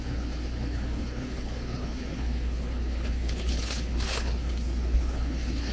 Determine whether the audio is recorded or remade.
remade